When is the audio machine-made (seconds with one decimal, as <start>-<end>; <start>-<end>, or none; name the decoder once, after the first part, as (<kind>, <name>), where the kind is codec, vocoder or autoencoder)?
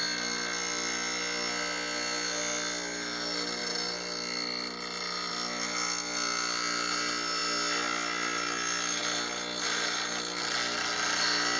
none